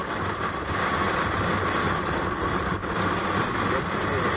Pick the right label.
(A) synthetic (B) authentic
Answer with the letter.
B